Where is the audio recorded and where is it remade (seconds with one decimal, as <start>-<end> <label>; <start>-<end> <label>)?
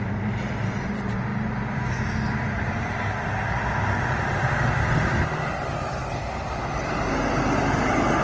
0.0-8.2 recorded